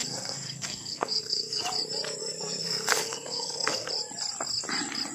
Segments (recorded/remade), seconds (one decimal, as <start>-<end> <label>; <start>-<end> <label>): 0.0-1.6 remade; 1.6-2.2 recorded; 2.2-3.9 remade; 3.9-5.1 recorded